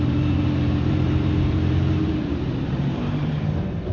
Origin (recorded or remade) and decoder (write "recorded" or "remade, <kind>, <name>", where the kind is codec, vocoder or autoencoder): remade, vocoder, BigVGAN v2